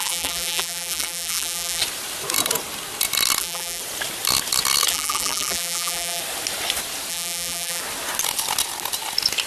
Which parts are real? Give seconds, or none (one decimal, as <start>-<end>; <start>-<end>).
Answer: 1.8-3.4; 3.8-4.9; 6.2-7.1; 7.8-9.5